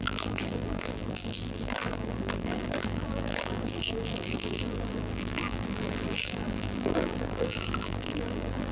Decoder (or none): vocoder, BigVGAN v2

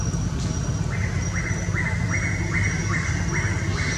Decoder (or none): none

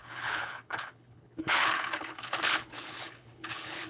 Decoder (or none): codec, HILCodec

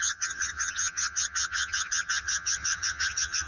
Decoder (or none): vocoder, HiFi-GAN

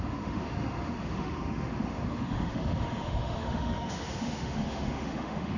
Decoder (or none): autoencoder, DAC-VAE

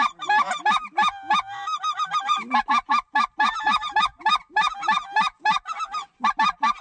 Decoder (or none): none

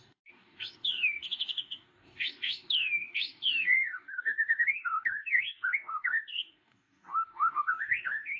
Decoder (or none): codec, DAC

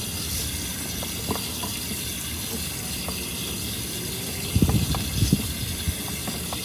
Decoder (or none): none